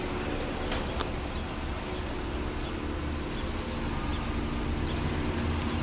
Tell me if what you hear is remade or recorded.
recorded